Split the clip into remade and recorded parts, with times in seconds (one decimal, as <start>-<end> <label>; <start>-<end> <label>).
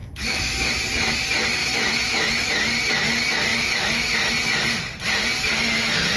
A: 0.0-0.7 remade; 0.7-1.6 recorded; 1.6-2.5 remade; 2.5-3.5 recorded; 3.5-4.3 remade; 4.3-6.2 recorded